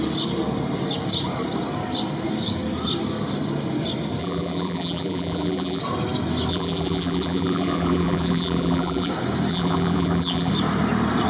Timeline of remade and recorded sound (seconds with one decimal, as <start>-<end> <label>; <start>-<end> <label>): 0.0-4.2 recorded; 4.2-5.8 remade; 5.8-6.5 recorded; 6.5-9.1 remade; 9.1-9.5 recorded; 9.5-10.5 remade; 10.5-11.3 recorded